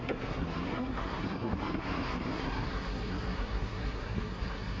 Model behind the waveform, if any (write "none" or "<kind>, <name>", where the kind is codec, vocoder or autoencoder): codec, SNAC